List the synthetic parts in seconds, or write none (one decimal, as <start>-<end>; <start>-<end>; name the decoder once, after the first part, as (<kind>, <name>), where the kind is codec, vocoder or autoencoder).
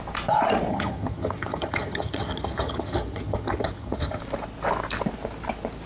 0.7-4.2 (vocoder, HiFi-GAN)